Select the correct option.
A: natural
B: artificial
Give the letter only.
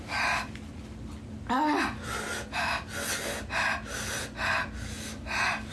A